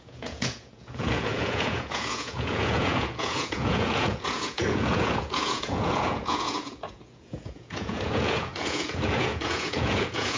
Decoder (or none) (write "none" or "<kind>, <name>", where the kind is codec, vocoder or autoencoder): vocoder, Vocos